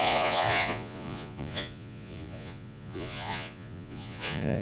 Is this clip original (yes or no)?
no